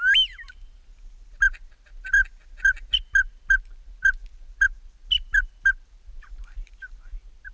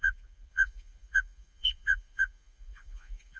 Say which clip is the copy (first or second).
second